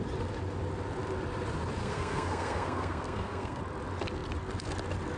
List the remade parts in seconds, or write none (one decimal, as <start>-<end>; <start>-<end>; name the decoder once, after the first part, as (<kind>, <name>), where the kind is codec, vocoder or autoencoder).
1.8-3.6 (codec, SNAC)